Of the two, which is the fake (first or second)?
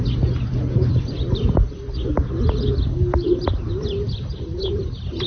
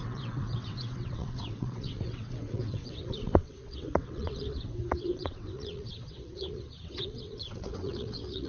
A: second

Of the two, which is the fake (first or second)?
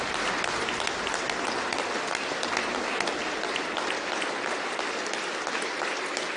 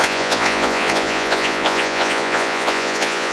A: second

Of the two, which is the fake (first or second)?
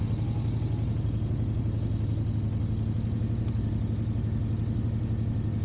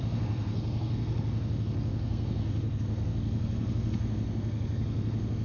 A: second